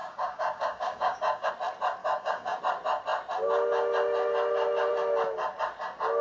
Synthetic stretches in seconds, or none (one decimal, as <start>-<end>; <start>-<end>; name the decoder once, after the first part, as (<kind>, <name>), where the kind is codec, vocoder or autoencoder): 0.0-1.5 (codec, DAC); 2.0-2.6